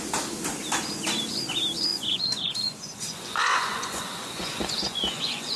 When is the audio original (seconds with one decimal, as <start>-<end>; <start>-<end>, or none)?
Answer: 0.0-1.9